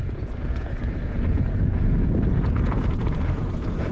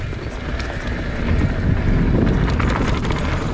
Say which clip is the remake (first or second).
first